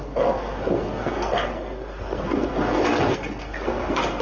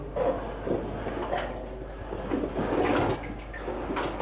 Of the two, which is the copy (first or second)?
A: first